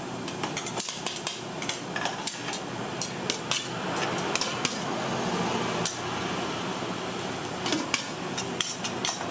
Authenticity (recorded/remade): recorded